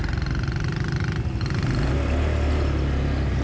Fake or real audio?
real